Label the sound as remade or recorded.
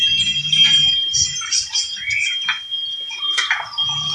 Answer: recorded